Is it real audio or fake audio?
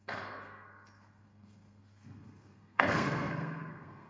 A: fake